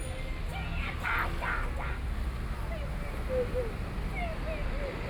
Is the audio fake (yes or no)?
no